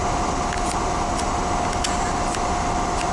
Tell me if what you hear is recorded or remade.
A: recorded